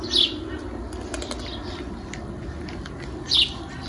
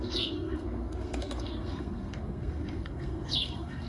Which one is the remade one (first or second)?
second